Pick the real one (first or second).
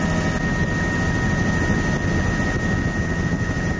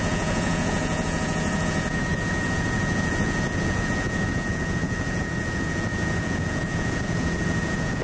first